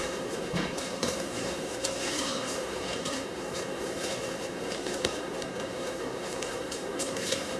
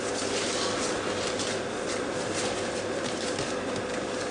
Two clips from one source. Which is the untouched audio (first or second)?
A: second